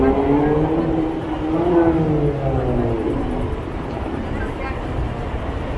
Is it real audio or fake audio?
real